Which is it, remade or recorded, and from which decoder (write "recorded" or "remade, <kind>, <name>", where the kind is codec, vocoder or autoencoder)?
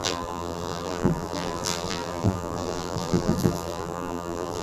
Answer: remade, vocoder, BigVGAN v2